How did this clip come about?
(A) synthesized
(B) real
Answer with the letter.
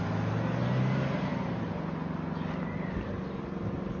B